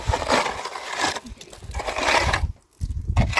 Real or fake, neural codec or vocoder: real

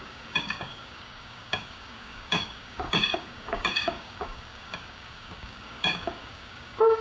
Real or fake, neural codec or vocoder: fake, codec, DAC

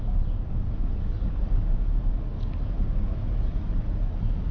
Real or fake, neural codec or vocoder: real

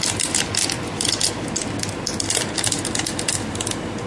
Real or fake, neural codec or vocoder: real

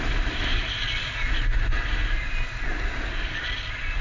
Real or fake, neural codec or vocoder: real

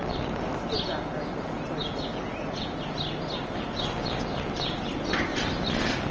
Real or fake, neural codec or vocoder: real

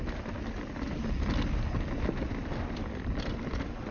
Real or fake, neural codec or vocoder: real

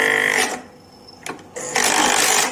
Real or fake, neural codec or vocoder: real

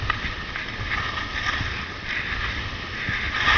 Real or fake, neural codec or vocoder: real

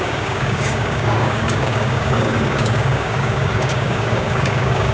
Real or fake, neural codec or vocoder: fake, codec, DAC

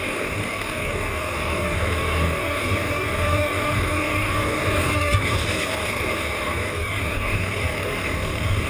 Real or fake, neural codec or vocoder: fake, codec, DAC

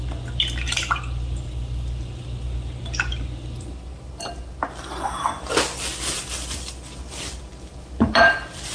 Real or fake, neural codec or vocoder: real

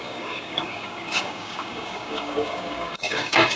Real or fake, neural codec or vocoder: fake, codec, DAC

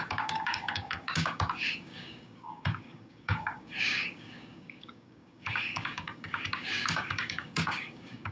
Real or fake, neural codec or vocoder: fake, codec, DAC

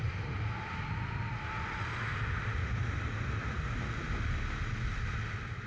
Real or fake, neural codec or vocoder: real